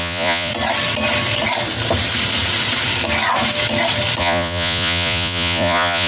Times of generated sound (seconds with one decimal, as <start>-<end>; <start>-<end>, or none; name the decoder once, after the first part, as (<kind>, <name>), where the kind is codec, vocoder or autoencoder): 0.0-0.5 (vocoder, Vocos); 4.2-6.1

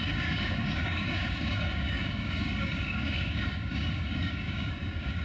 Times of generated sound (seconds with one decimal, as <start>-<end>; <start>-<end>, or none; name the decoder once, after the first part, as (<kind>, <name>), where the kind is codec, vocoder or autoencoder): 0.0-5.2 (codec, DAC)

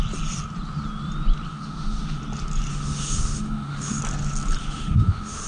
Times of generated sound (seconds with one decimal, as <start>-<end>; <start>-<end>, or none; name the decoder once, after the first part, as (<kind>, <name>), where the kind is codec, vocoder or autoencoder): 1.5-2.2 (autoencoder, DAC-VAE); 2.7-4.0; 4.6-5.5

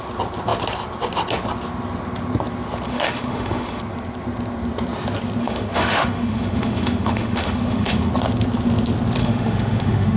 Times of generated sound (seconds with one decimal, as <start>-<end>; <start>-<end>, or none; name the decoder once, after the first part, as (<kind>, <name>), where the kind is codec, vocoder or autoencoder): 2.9-3.8 (autoencoder, DAC-VAE); 5.4-8.1; 9.2-10.2

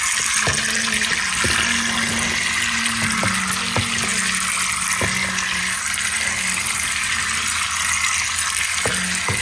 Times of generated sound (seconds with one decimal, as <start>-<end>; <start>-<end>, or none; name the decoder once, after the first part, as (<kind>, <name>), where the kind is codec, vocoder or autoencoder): none

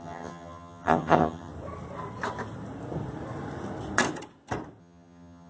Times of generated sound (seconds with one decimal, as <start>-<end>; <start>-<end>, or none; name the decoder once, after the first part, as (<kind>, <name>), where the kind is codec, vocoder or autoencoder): 0.0-1.5 (vocoder, HiFi-GAN); 4.8-5.5

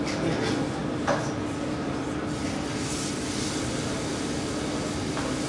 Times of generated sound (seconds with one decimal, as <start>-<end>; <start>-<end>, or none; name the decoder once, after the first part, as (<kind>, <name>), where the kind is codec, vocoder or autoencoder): none

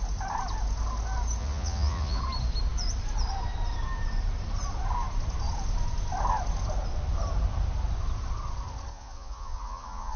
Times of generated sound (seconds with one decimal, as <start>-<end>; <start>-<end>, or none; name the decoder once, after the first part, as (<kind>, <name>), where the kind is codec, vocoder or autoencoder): 1.4-2.2 (vocoder, Vocos); 8.9-10.2